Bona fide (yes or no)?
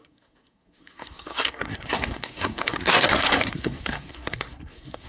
no